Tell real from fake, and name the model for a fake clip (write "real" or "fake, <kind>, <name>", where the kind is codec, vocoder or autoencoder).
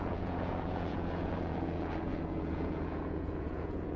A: fake, vocoder, Vocos